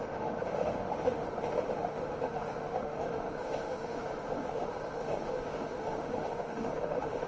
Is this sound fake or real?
fake